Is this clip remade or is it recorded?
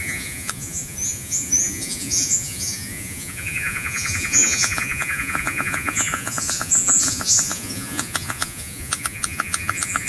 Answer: remade